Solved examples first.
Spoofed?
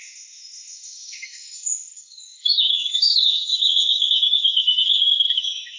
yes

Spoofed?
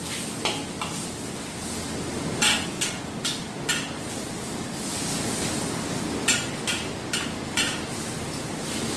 no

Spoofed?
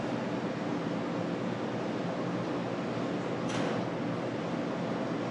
no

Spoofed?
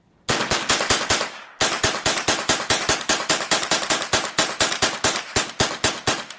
no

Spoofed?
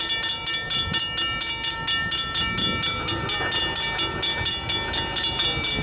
no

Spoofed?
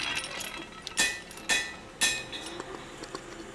no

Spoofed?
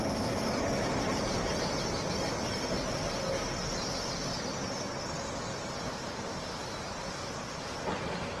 no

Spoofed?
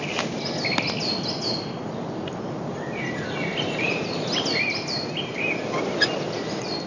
no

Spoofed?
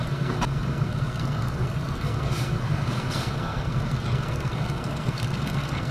yes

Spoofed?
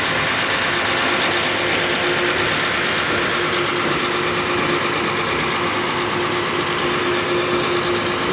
no